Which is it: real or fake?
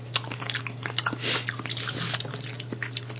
real